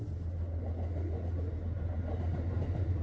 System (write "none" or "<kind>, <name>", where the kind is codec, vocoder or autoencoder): none